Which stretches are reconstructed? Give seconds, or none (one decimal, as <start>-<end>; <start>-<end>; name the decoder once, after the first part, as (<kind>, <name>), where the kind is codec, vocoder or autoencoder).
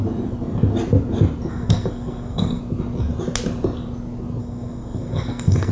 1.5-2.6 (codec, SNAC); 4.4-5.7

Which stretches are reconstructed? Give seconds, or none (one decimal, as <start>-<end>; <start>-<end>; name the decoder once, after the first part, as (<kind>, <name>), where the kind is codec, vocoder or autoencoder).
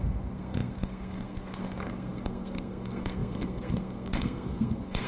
0.0-5.1 (codec, SNAC)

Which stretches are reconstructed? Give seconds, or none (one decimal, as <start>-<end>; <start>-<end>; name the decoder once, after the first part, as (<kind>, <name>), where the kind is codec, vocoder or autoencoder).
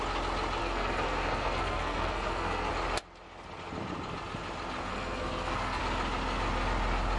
0.6-2.7 (codec, SNAC); 4.9-5.8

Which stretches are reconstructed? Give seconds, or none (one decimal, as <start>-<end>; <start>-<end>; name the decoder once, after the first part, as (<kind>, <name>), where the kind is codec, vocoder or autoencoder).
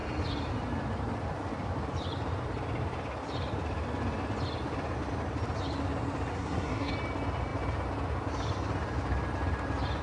6.3-6.9 (codec, SNAC)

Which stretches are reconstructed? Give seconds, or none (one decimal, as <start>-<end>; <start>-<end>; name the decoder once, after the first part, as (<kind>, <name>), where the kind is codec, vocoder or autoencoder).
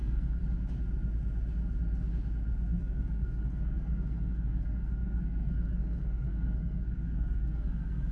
0.0-0.4 (codec, SNAC); 2.8-8.1